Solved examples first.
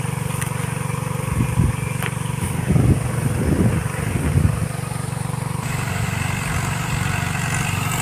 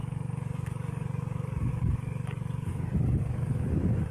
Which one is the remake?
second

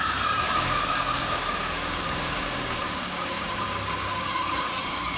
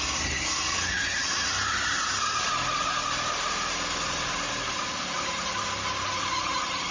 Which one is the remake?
first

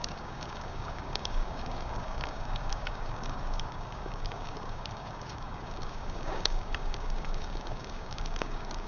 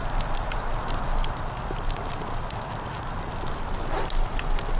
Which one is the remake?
first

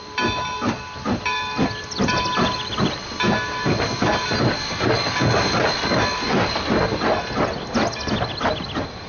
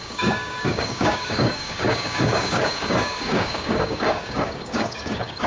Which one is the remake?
second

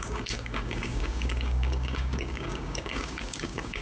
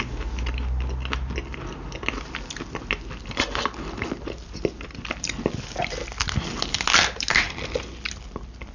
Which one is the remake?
first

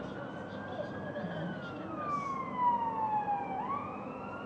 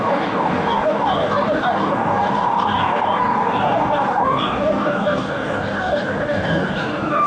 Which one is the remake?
second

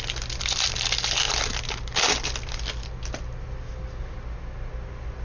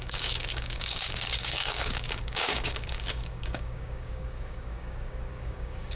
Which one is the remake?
second